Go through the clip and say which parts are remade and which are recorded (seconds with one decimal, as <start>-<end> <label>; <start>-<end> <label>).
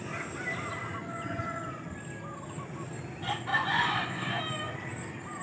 0.0-1.0 recorded; 1.0-2.0 remade; 2.0-3.5 recorded; 3.5-4.4 remade; 4.4-5.4 recorded